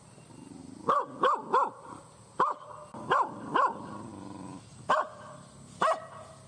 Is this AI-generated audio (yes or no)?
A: no